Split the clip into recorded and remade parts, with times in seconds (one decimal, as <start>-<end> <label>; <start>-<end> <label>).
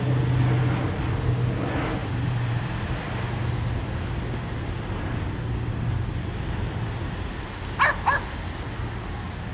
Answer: 0.0-2.0 recorded; 2.0-2.7 remade; 2.7-9.5 recorded